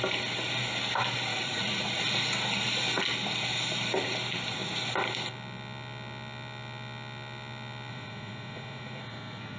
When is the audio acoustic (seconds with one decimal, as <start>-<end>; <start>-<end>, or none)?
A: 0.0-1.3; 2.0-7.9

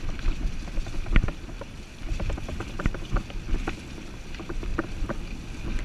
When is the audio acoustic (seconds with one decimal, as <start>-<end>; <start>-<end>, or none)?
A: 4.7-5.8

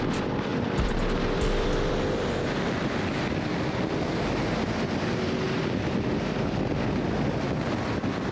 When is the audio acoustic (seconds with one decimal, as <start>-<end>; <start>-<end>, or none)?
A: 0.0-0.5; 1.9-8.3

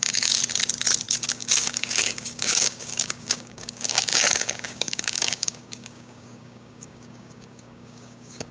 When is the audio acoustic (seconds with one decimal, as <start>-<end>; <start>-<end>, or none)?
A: 0.4-1.3

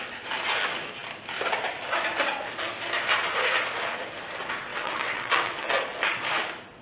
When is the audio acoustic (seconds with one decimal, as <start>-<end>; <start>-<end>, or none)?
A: 0.0-4.7; 5.7-6.8

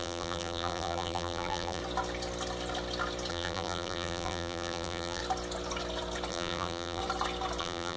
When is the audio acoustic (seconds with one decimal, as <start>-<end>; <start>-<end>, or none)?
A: 1.8-3.3; 5.2-6.3; 7.0-7.6

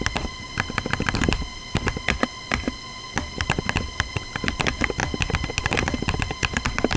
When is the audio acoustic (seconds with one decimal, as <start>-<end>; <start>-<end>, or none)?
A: 0.0-7.0